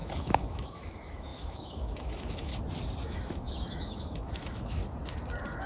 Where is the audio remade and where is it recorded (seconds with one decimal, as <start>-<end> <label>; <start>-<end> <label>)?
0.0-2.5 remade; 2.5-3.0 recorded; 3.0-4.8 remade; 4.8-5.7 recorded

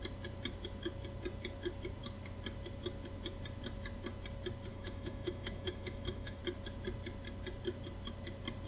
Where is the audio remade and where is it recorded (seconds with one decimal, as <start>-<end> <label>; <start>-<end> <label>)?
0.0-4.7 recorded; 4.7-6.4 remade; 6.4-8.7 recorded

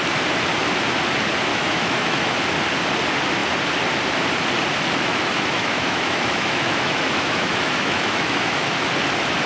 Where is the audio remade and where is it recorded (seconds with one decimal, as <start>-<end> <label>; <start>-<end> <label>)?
0.0-1.5 recorded; 1.5-2.5 remade; 2.5-5.1 recorded; 5.1-8.9 remade; 8.9-9.5 recorded